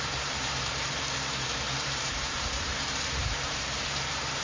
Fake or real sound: fake